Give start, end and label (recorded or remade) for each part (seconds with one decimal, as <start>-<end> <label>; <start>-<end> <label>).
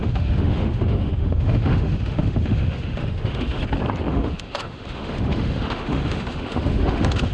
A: 0.0-3.6 remade; 3.6-4.1 recorded; 4.1-7.3 remade